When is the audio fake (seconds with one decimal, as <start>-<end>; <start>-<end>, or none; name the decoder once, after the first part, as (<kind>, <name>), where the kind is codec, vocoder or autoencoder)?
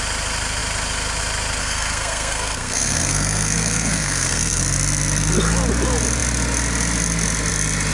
1.6-4.6 (codec, SNAC)